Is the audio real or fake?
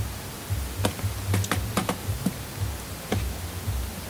real